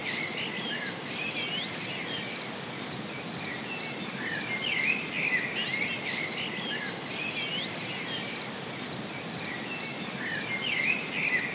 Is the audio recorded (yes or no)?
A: yes